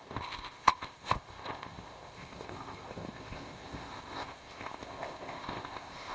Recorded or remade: remade